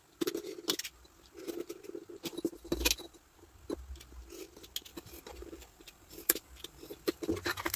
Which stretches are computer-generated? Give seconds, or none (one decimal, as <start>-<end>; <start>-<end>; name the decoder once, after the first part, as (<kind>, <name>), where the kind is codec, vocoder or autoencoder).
4.9-7.3 (vocoder, BigVGAN v2)

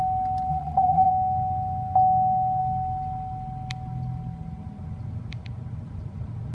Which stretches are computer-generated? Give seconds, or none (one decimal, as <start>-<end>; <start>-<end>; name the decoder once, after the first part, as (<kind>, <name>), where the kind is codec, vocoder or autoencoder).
0.5-1.1 (vocoder, Vocos)

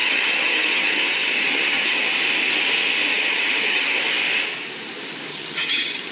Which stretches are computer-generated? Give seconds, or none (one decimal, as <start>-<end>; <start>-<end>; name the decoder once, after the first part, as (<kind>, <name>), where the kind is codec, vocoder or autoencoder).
0.0-2.1 (vocoder, HiFi-GAN); 3.1-4.0; 5.3-6.1

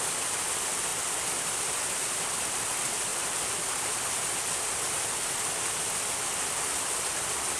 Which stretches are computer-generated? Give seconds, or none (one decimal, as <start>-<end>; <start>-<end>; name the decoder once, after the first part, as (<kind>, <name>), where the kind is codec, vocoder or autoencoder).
none

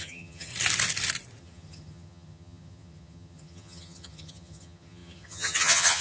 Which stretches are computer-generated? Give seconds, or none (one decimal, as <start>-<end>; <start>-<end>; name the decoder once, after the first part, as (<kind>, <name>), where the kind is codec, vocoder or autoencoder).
0.0-0.5 (vocoder, HiFi-GAN); 1.4-6.0

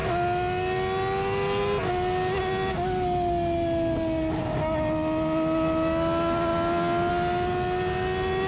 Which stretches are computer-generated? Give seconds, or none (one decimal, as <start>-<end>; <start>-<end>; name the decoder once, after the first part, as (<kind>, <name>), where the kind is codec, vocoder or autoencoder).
none

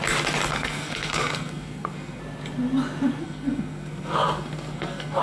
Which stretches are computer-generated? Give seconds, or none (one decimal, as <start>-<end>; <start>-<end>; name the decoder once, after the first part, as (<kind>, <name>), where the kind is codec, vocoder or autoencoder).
0.5-2.2 (codec, SNAC); 3.2-5.2

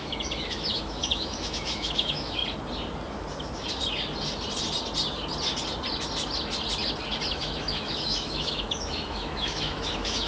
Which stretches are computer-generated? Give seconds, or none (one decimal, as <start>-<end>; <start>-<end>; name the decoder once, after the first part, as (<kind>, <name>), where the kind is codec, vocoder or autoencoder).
0.0-2.4 (autoencoder, DAC-VAE); 7.3-10.3